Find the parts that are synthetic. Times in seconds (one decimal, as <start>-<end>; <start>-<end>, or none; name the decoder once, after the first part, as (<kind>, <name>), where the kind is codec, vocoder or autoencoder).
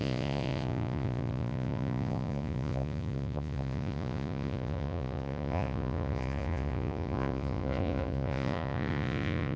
0.0-9.6 (vocoder, Vocos)